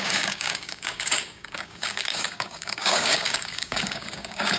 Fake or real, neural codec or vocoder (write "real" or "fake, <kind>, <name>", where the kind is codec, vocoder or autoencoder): fake, codec, DAC